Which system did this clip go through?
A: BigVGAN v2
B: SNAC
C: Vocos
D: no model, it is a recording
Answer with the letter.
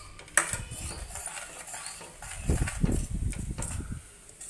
D